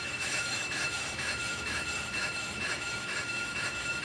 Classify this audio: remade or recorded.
remade